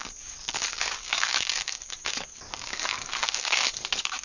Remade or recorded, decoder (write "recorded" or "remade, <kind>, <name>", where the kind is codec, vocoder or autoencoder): remade, codec, DAC